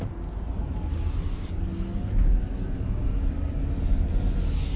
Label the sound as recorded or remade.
recorded